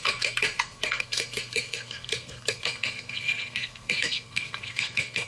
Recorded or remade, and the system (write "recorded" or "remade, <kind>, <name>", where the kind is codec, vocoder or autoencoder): remade, codec, SNAC